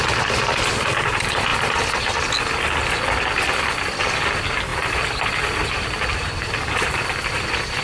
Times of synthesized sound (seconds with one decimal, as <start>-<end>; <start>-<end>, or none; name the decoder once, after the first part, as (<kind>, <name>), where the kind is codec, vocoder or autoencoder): 1.5-2.2 (vocoder, BigVGAN v2); 4.7-7.8